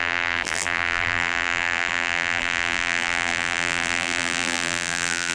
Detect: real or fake fake